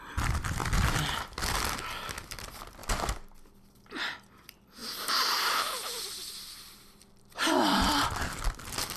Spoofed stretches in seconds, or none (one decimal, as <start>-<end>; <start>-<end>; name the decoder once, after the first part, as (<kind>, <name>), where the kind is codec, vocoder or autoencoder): none